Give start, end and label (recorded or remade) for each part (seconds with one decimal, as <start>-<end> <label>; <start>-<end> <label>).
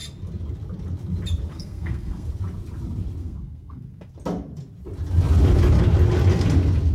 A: 0.0-1.5 recorded; 1.5-2.3 remade; 2.3-3.2 recorded; 3.2-4.1 remade; 4.1-6.9 recorded